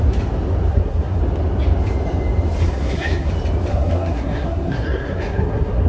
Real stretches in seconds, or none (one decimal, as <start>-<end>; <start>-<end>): 0.0-0.7; 1.2-2.6; 3.3-3.7